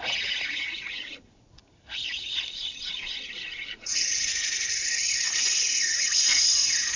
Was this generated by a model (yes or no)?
yes